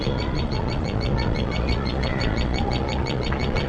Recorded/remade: remade